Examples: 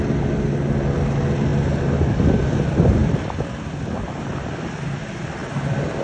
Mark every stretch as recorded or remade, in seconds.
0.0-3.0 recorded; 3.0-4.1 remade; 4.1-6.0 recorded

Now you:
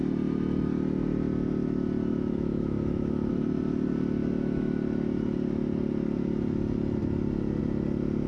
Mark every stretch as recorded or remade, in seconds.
0.0-2.1 recorded; 2.1-3.3 remade; 3.3-4.2 recorded; 4.2-4.7 remade; 4.7-8.3 recorded